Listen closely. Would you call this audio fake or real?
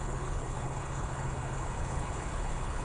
fake